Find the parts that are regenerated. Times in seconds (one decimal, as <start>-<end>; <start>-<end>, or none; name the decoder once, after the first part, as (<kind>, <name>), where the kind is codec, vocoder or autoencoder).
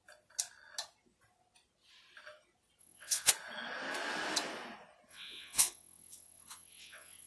2.8-3.3 (vocoder, WaveNeXt); 5.1-7.3